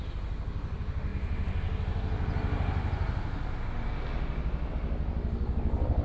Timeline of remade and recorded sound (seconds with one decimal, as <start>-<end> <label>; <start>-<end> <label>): 0.0-6.0 recorded